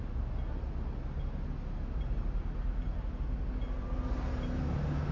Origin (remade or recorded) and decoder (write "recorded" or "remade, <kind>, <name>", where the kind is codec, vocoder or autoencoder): recorded